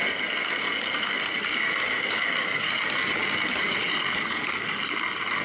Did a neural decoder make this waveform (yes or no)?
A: no